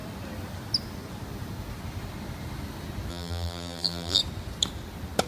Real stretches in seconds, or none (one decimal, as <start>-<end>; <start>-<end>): 0.0-3.1; 4.2-5.3